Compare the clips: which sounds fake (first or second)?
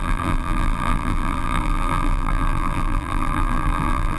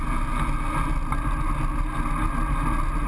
first